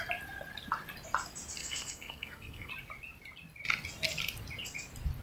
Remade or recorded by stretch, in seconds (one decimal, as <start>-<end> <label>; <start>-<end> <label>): 0.0-1.6 recorded; 1.6-2.7 remade; 2.7-5.2 recorded